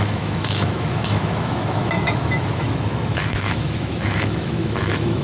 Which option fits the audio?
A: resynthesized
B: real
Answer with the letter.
A